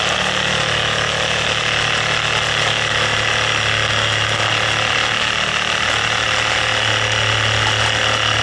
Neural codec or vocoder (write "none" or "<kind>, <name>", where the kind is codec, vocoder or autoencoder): none